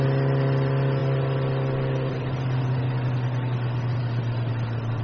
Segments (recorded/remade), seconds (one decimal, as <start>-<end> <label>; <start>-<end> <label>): 0.0-5.0 recorded